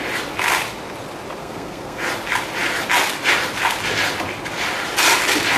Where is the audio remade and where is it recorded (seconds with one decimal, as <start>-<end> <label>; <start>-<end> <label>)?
0.0-1.4 recorded; 1.4-2.0 remade; 2.0-5.6 recorded